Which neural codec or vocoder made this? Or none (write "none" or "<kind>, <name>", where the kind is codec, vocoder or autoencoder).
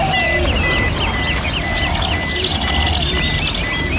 none